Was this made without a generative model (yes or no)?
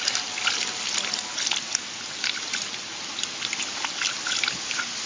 yes